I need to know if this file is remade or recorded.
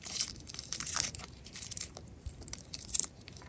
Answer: remade